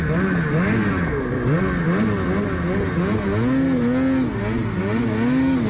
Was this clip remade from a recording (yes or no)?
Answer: no